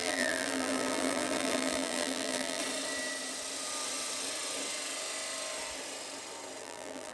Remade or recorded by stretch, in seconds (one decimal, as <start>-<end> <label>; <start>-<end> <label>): 0.0-2.6 remade; 2.6-6.6 recorded; 6.6-7.1 remade